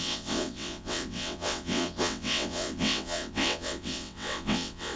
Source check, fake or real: fake